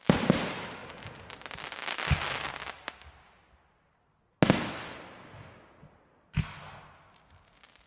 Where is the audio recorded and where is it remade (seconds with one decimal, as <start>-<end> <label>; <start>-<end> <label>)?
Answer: 0.0-7.9 recorded